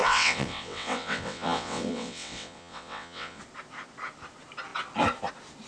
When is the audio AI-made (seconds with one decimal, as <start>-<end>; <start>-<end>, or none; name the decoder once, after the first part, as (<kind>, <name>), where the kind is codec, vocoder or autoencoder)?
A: 0.0-3.4 (vocoder, WaveNeXt)